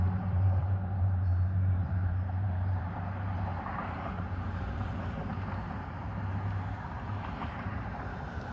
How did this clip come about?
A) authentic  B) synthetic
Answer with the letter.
B